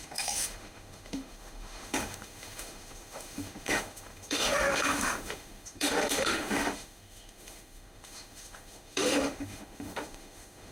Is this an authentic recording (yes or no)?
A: no